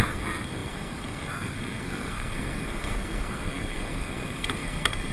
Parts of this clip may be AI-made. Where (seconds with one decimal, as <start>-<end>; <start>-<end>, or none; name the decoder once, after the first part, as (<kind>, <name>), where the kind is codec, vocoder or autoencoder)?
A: 0.0-5.1 (codec, SNAC)